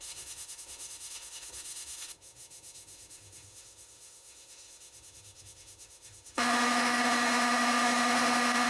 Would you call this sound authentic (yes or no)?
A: no